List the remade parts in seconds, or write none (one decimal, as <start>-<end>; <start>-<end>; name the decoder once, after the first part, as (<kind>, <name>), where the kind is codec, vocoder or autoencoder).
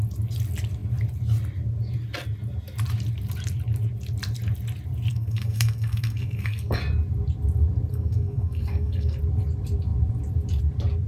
5.1-6.8 (codec, SNAC); 7.9-9.2